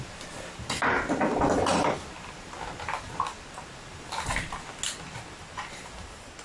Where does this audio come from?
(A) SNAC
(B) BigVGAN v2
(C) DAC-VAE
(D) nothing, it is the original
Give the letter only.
D